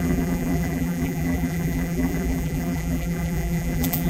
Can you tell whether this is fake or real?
fake